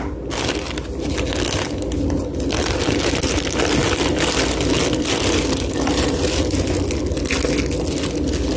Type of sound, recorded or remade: recorded